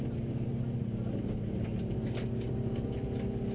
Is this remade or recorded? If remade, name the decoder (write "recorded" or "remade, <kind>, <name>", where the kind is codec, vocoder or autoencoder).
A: recorded